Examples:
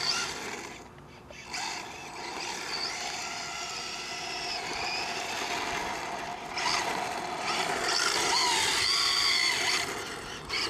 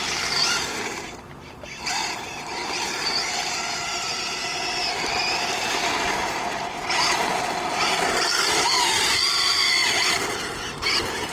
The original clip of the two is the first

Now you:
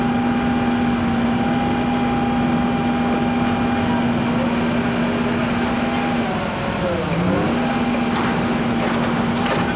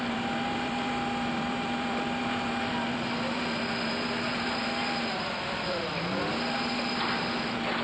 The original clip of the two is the first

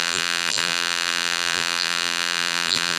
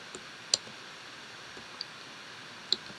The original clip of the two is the second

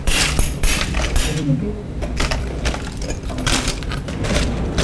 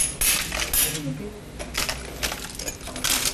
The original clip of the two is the second